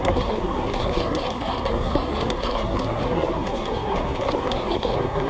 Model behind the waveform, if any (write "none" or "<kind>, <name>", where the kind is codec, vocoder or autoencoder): codec, SNAC